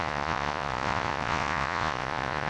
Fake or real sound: fake